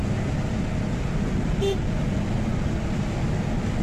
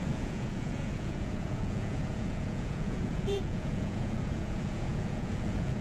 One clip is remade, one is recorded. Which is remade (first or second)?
second